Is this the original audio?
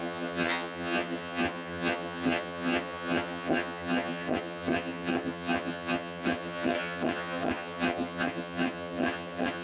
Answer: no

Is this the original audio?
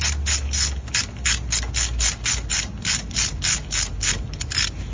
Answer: yes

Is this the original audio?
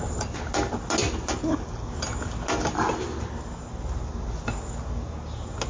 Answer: yes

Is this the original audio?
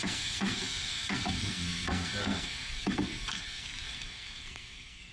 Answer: no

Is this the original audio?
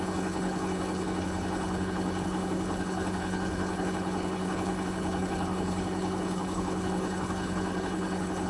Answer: no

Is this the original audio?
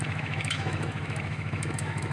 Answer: no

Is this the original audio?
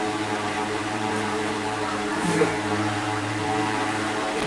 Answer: no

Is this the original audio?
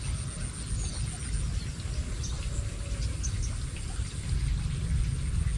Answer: yes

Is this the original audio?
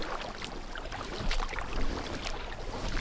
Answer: yes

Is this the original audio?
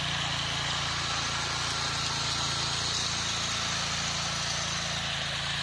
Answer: yes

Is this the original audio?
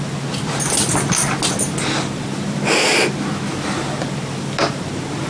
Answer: yes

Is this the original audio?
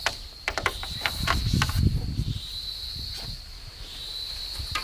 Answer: yes